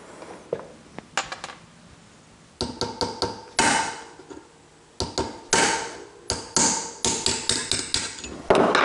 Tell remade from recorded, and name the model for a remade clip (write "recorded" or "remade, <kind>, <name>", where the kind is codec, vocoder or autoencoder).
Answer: recorded